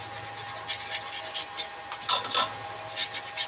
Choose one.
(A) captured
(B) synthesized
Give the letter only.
A